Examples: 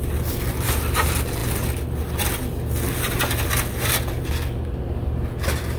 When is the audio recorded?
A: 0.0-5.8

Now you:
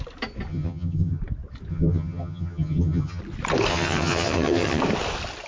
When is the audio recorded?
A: 0.0-0.5; 1.2-1.7; 3.2-3.7; 4.8-5.5